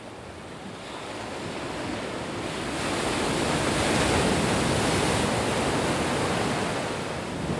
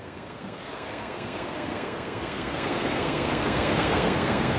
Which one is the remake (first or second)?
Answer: second